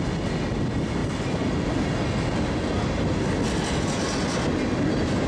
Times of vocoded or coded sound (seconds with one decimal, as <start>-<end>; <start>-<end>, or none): none